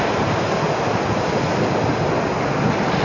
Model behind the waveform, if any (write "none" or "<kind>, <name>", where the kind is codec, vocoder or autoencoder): none